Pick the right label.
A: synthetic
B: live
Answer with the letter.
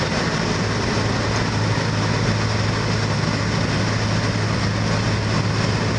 B